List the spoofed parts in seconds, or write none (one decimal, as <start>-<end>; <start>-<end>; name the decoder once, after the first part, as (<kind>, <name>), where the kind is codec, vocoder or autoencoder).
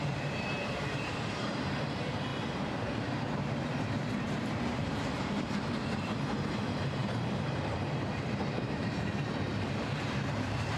0.0-10.8 (vocoder, BigVGAN v2)